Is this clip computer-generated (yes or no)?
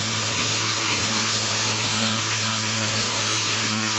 yes